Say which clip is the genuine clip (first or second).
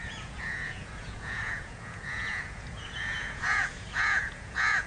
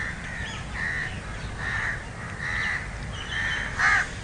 second